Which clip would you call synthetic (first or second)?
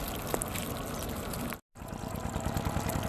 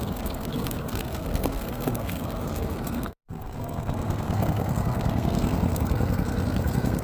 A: second